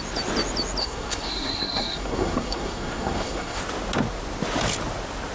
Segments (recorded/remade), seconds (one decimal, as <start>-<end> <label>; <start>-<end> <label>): 0.0-0.8 recorded; 0.8-3.6 remade; 3.6-5.3 recorded